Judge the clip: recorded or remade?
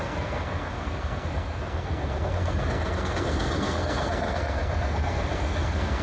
remade